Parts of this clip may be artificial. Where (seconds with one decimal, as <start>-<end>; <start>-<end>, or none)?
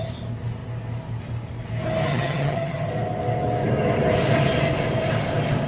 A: 2.1-2.9